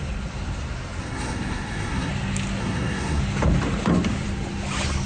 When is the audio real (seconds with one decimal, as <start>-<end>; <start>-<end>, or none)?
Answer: 0.0-1.0; 2.1-2.6; 3.2-5.1